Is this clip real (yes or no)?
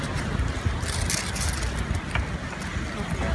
yes